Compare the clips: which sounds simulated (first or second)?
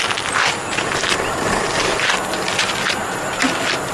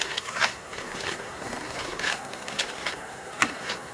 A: second